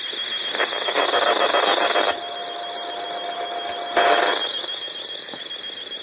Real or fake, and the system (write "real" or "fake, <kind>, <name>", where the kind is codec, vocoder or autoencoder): real